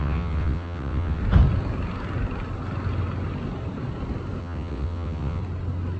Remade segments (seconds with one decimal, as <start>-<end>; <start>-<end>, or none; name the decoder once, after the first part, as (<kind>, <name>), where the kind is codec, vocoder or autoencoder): 0.0-1.2 (vocoder, WaveNeXt); 4.4-5.4